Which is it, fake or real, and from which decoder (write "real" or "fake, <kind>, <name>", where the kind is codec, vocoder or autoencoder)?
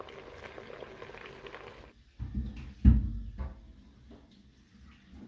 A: real